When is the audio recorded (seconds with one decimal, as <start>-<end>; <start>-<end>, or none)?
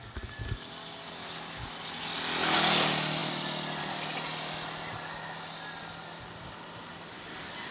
0.0-7.7